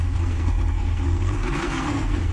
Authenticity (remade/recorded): remade